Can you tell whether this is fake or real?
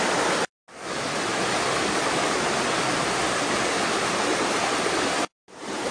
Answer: real